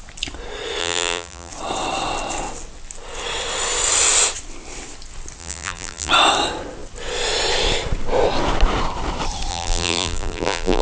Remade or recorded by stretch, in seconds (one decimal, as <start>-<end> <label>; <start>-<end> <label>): 0.0-0.8 recorded; 0.8-1.5 remade; 1.5-5.4 recorded; 5.4-6.1 remade; 6.1-9.5 recorded; 9.5-10.8 remade